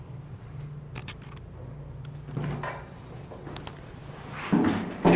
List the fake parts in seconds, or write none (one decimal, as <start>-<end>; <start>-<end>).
none